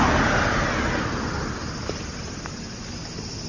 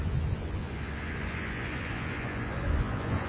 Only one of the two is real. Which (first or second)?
first